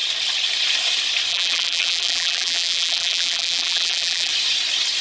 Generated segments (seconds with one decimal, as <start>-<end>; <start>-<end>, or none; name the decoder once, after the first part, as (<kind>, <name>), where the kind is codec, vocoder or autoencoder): 1.3-4.3 (vocoder, BigVGAN v2)